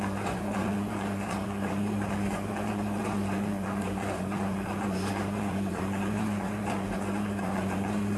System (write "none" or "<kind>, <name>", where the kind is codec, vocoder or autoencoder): vocoder, Vocos